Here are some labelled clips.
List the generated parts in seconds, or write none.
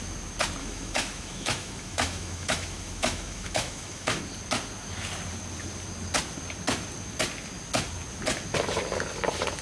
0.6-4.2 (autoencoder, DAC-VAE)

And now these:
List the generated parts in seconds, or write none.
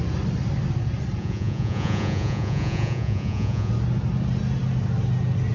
1.2-3.7 (vocoder, Vocos)